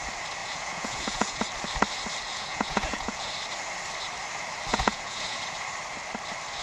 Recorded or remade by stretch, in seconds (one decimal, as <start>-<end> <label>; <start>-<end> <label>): 0.0-0.4 recorded; 0.4-1.4 remade; 1.4-2.3 recorded; 2.3-3.3 remade; 3.3-4.7 recorded; 4.7-5.4 remade; 5.4-6.6 recorded

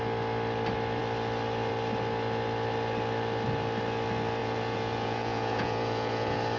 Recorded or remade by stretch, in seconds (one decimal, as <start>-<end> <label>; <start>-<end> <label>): 0.0-4.4 recorded; 4.4-6.6 remade

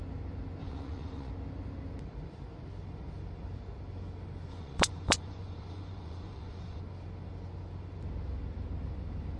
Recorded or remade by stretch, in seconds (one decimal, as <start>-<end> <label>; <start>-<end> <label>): 0.0-0.6 recorded; 0.6-1.3 remade; 1.3-4.5 recorded; 4.5-6.8 remade; 6.8-9.4 recorded

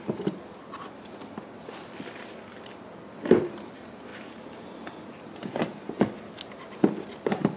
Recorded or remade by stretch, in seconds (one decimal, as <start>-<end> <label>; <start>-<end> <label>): 0.0-7.6 recorded

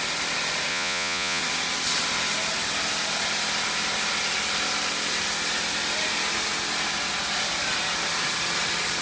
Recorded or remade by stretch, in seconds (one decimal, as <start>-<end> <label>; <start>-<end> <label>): 0.0-0.7 recorded; 0.7-1.4 remade; 1.4-9.0 recorded

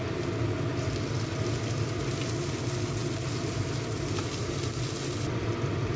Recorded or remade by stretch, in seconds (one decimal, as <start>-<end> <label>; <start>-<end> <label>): 0.0-6.0 recorded

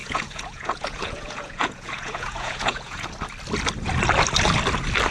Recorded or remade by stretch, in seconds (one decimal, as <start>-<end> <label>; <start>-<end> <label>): 0.0-3.1 remade; 3.1-5.1 recorded

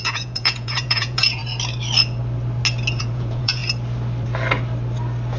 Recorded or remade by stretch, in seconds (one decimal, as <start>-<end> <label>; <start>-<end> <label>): 0.0-1.4 remade; 1.4-3.0 recorded; 3.0-3.6 remade; 3.6-5.4 recorded